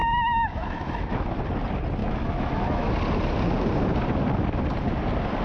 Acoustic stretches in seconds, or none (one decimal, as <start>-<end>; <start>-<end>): 1.4-2.0; 2.9-5.4